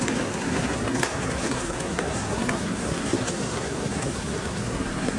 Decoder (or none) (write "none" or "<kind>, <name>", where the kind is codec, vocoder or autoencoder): codec, SNAC